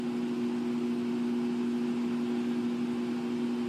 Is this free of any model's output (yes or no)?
yes